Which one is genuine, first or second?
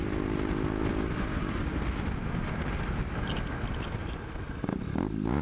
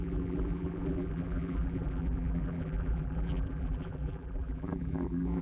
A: first